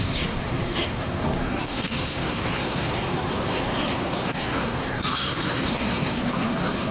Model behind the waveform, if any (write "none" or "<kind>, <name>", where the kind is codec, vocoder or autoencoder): codec, SNAC